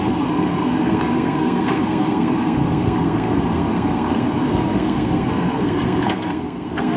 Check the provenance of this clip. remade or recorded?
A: remade